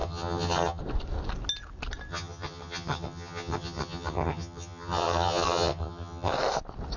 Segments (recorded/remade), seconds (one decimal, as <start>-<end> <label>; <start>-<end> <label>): 0.0-0.8 remade; 0.8-2.1 recorded; 2.1-6.3 remade; 6.3-7.0 recorded